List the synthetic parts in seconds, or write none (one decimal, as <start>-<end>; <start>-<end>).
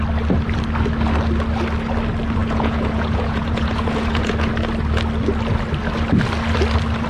2.4-4.5